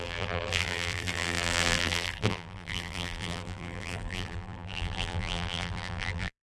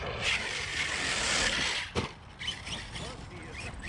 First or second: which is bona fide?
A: second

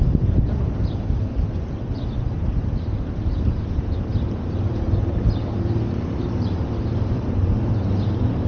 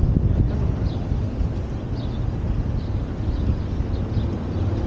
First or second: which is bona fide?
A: second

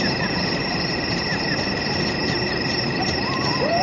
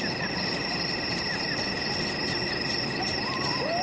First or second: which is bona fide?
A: second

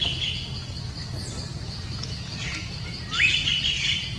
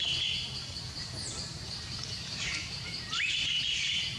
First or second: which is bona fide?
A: first